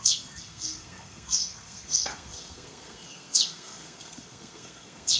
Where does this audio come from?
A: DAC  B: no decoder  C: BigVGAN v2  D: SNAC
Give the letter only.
D